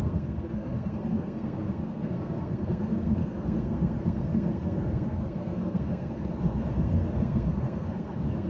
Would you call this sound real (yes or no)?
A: no